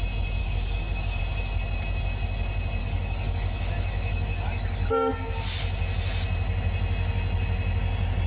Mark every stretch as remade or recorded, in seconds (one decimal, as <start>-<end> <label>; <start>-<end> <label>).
0.0-0.4 recorded; 0.4-1.2 remade; 1.2-2.8 recorded; 2.8-5.1 remade; 5.1-8.3 recorded